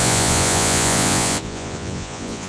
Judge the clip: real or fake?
fake